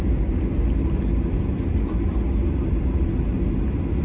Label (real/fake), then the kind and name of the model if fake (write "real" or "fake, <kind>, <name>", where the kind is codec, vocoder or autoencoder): real